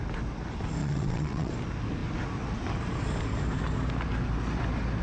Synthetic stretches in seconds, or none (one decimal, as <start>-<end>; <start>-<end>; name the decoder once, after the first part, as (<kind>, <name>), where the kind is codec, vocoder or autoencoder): 0.8-1.5 (vocoder, WaveNeXt)